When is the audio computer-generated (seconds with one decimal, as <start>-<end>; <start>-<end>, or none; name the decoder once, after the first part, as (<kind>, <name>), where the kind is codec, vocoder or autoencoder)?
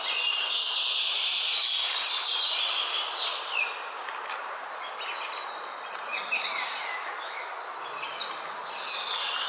6.8-7.6 (autoencoder, DAC-VAE)